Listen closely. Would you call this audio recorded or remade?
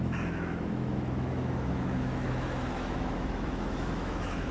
remade